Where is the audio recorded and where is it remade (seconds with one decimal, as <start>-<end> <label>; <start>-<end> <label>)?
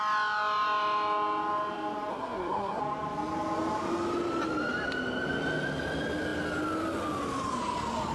0.0-2.1 recorded; 2.1-2.8 remade; 2.8-8.1 recorded